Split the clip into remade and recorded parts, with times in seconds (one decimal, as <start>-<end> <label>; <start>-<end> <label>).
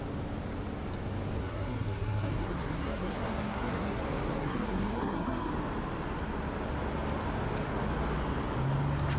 0.0-1.4 recorded; 1.4-4.0 remade; 4.0-4.4 recorded; 4.4-5.5 remade; 5.5-9.2 recorded